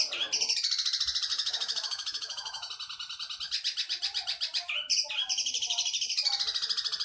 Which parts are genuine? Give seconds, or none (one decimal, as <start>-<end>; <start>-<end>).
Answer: 0.0-1.3; 2.7-7.0